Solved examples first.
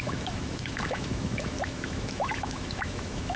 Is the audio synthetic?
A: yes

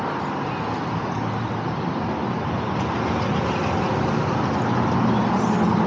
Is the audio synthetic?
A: no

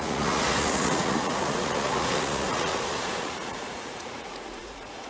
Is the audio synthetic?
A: yes